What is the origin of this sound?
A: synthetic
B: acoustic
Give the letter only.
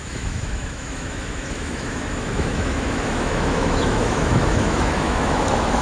A